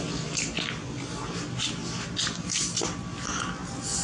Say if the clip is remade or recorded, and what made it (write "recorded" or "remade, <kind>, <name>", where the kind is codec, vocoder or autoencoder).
recorded